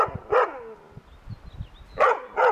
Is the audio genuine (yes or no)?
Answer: yes